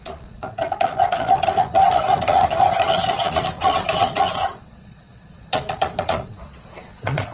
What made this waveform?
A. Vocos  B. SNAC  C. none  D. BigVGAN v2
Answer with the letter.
A